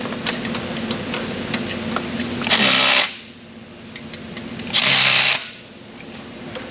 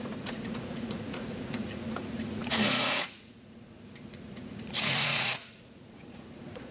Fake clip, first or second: second